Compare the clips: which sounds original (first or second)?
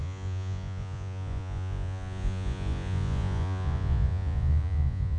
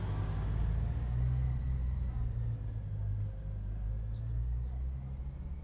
second